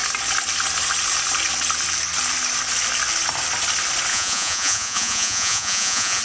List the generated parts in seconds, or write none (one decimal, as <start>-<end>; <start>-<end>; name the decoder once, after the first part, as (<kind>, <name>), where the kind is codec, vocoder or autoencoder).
4.1-6.2 (vocoder, Vocos)